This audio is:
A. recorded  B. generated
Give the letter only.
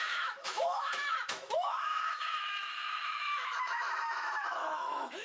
B